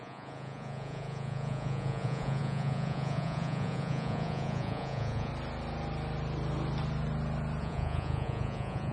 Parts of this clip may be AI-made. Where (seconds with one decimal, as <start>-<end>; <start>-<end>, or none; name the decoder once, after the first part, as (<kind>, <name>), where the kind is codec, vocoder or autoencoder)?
0.0-5.3 (vocoder, Vocos); 7.6-8.9